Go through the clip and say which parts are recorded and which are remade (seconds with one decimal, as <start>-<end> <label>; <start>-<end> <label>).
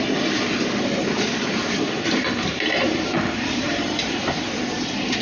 0.0-1.3 recorded; 1.3-4.4 remade; 4.4-5.2 recorded